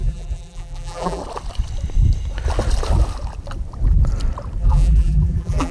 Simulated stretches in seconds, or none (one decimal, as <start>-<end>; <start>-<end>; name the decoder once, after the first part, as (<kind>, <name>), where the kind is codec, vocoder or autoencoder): 0.0-1.2 (vocoder, BigVGAN v2); 4.6-5.7